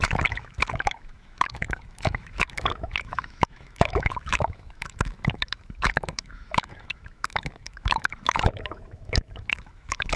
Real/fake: fake